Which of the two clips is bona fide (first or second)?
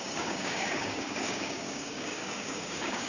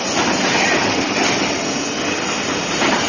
second